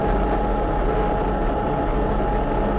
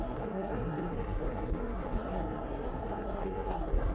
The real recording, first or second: first